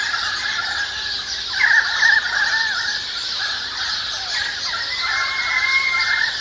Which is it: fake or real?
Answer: real